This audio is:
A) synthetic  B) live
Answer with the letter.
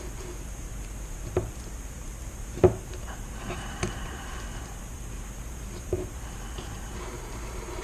A